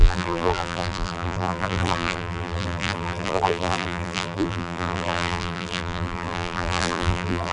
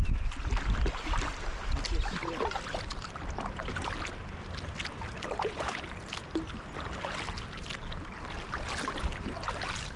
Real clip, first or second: second